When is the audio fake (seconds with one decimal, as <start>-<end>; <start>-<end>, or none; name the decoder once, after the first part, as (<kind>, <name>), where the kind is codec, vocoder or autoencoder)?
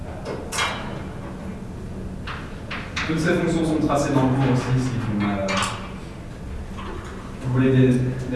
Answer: none